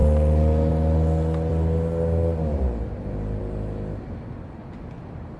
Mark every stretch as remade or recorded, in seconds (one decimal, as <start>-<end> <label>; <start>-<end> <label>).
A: 0.0-5.4 recorded